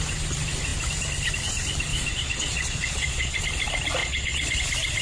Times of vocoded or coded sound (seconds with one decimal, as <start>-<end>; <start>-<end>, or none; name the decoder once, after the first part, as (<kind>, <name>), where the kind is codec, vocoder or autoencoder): 1.9-3.4 (vocoder, Vocos); 4.0-4.6